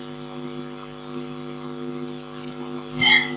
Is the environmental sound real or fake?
real